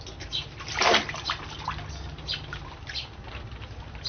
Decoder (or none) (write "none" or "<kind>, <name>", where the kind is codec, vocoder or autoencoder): none